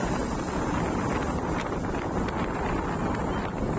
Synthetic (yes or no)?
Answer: no